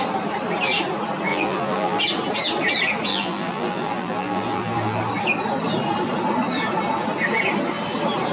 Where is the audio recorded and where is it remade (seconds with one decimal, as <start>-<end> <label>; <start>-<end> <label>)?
0.0-1.3 recorded; 1.3-2.0 remade; 2.0-3.1 recorded; 3.1-5.0 remade; 5.0-8.3 recorded